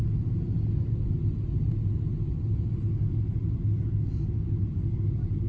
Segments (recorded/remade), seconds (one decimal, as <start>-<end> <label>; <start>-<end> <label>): 0.0-5.5 recorded